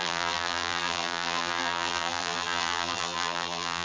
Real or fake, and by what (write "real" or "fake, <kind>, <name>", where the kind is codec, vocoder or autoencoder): fake, vocoder, BigVGAN v2